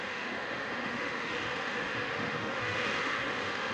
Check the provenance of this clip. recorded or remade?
remade